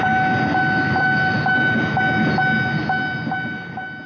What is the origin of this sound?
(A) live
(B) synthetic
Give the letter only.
A